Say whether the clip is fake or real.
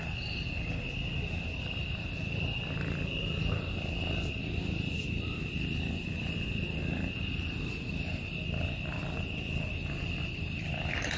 real